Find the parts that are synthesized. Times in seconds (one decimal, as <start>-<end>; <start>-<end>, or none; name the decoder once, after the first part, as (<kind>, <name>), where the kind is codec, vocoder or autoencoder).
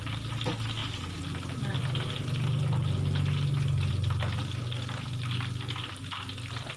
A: none